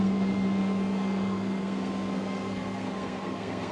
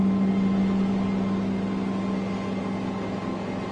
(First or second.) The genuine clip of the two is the second